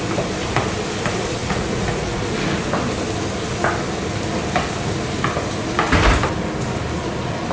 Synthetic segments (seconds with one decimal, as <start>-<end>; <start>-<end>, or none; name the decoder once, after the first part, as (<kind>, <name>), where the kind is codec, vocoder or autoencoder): 1.4-2.2 (vocoder, Vocos)